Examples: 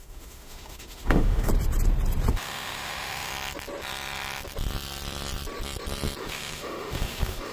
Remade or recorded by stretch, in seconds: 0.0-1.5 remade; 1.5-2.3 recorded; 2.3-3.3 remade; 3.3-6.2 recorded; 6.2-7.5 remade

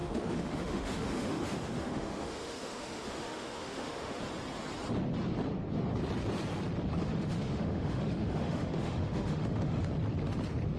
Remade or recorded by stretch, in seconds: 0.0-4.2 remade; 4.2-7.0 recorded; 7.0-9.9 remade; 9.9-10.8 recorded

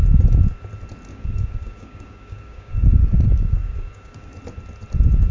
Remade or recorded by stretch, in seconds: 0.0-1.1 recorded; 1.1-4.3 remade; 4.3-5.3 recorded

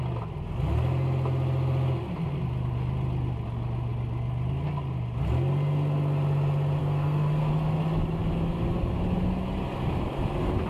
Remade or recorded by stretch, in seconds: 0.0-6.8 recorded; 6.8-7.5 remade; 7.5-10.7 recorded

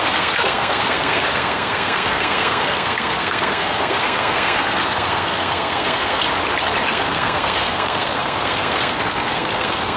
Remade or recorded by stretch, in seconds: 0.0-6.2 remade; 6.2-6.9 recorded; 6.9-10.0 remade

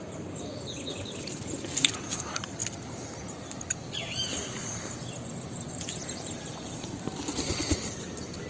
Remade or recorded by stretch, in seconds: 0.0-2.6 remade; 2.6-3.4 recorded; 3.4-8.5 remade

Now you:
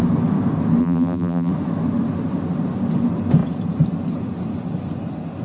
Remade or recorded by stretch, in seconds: 0.0-0.8 recorded; 0.8-1.5 remade; 1.5-5.4 recorded